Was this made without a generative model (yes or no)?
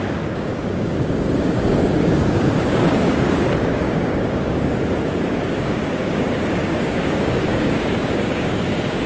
no